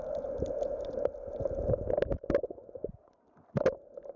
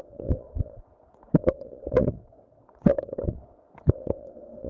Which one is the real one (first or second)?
first